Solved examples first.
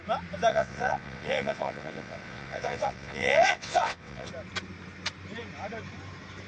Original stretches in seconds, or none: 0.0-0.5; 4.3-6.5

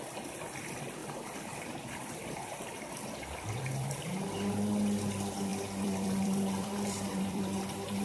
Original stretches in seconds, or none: 0.0-1.0; 4.1-5.5

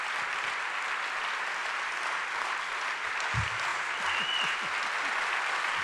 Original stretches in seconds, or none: 0.0-5.8

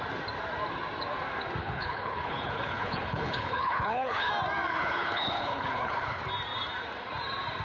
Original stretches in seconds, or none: 0.0-1.6; 4.3-4.7; 6.2-7.6

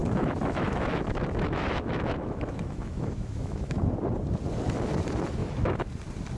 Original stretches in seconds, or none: 3.8-5.4; 5.9-6.4

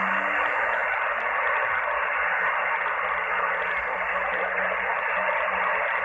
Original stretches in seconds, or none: 0.0-6.0

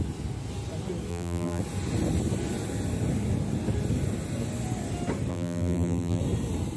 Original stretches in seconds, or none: 0.0-1.1; 1.6-5.3; 6.2-6.8